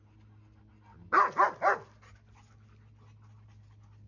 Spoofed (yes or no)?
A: no